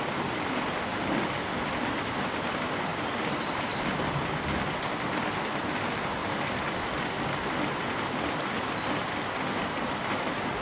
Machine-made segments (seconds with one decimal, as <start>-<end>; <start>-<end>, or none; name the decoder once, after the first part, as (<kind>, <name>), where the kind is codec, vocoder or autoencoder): 2.9-3.9 (vocoder, BigVGAN v2); 6.2-7.0